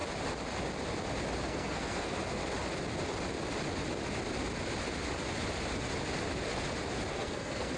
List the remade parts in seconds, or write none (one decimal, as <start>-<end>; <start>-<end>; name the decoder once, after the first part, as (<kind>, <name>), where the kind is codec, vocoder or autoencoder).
1.4-2.4 (codec, SNAC); 7.1-7.8